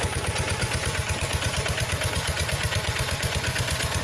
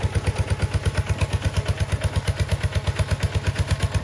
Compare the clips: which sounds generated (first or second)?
first